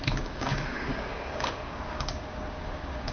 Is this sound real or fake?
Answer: fake